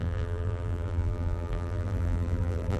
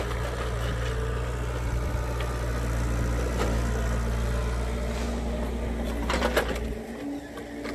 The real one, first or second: second